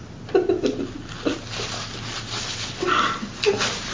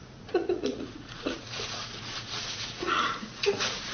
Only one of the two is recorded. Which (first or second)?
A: first